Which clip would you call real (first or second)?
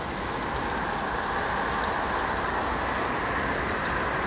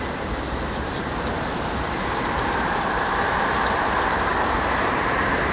first